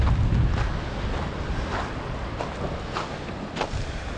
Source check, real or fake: real